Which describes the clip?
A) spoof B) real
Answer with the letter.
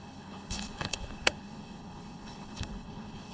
A